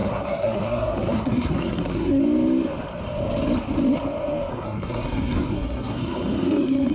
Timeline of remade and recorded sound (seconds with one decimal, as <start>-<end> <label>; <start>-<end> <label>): 0.0-2.2 remade; 2.2-4.5 recorded; 4.5-6.9 remade